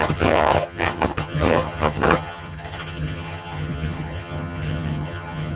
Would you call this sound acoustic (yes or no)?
no